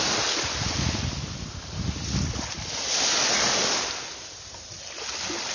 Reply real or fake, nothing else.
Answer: real